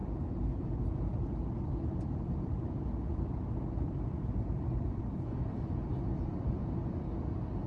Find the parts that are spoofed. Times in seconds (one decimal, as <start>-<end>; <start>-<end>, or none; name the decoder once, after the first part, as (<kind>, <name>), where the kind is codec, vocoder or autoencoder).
0.0-7.7 (vocoder, BigVGAN v2)